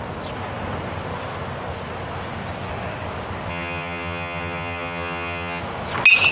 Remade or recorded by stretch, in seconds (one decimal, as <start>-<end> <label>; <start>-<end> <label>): 0.0-3.5 recorded; 3.5-5.6 remade; 5.6-6.3 recorded